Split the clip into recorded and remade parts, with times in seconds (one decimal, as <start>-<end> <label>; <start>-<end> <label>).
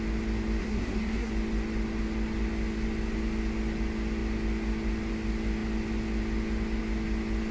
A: 0.0-0.6 recorded; 0.6-1.3 remade; 1.3-7.5 recorded